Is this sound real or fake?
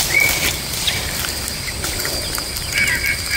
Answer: real